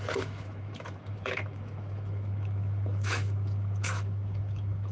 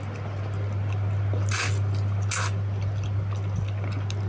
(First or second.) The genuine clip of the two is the second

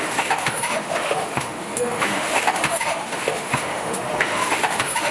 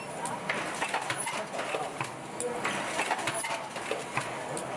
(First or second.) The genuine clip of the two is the second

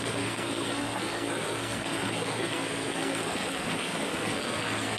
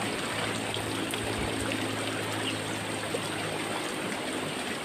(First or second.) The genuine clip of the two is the second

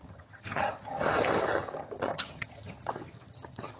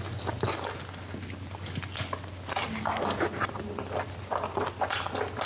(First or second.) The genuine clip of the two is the second